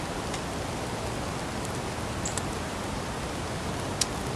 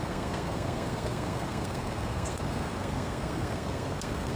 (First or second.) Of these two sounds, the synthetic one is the second